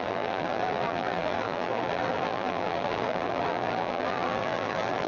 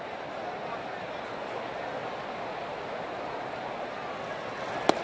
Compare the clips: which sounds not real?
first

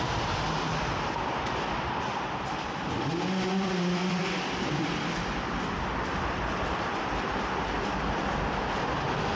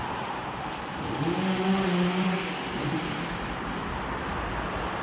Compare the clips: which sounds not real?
first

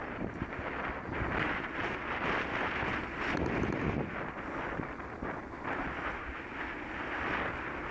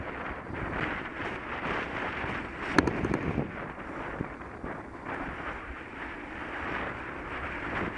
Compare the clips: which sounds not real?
second